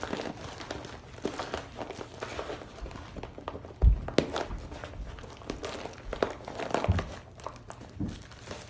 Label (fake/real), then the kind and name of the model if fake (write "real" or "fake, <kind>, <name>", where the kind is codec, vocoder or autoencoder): real